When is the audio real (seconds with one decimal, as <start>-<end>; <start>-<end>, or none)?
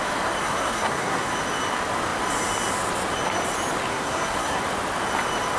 0.0-0.4; 1.3-3.9; 4.6-5.6